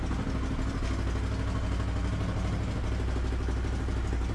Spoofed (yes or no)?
no